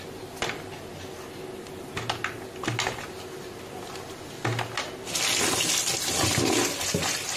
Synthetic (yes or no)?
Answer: no